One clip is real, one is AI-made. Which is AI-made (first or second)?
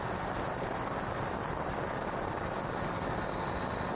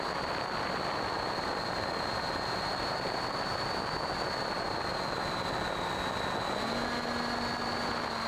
first